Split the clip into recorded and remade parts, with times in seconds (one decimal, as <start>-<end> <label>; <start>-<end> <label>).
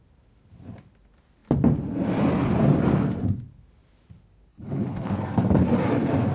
0.0-4.5 recorded; 4.5-5.2 remade; 5.2-6.3 recorded